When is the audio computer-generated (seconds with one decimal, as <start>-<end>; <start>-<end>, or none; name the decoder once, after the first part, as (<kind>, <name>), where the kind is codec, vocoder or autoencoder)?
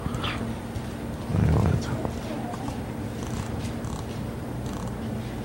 none